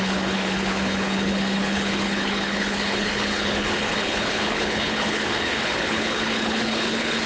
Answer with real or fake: fake